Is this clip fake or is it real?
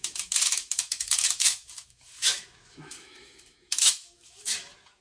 fake